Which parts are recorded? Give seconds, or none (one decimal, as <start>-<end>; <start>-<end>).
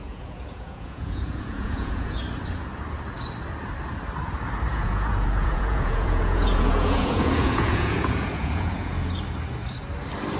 2.2-4.7; 9.1-10.4